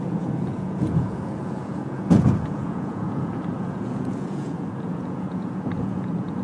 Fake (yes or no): yes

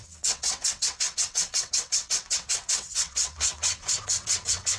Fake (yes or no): yes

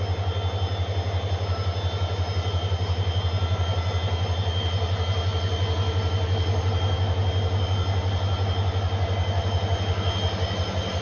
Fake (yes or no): no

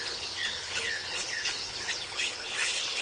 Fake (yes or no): yes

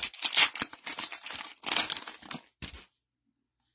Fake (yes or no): no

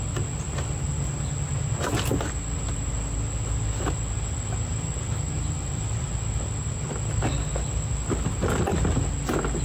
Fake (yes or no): no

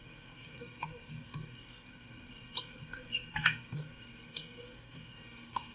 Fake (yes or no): yes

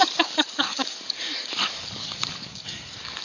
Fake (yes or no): yes